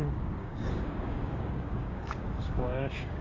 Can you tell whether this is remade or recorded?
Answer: remade